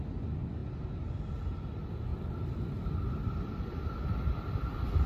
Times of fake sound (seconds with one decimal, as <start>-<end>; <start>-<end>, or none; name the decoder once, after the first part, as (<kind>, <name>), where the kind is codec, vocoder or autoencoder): none